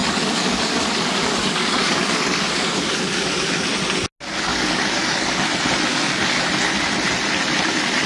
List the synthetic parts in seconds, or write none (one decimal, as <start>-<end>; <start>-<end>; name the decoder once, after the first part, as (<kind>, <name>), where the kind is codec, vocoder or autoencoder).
0.0-3.7 (codec, DAC); 4.5-5.4; 5.9-6.4